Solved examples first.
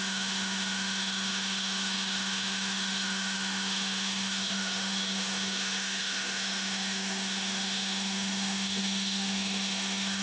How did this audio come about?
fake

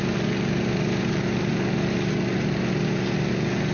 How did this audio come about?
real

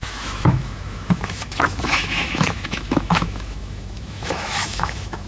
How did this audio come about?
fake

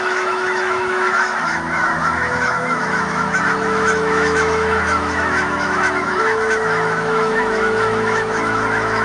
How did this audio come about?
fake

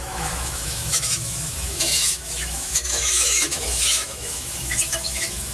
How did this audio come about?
fake